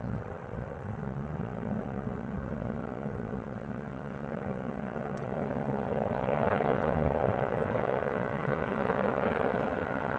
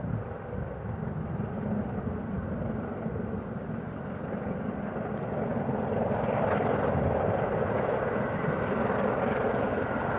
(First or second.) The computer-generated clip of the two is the first